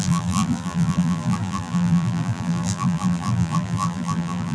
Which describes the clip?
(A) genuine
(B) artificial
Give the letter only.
B